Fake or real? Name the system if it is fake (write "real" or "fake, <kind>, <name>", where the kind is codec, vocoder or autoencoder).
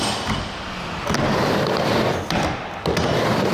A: real